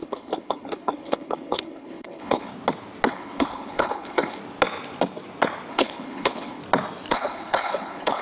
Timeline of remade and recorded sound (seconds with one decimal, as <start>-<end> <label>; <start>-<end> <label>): 0.0-2.5 remade; 2.5-3.1 recorded; 3.1-4.4 remade; 4.4-5.7 recorded; 5.7-6.6 remade; 6.6-7.1 recorded; 7.1-8.2 remade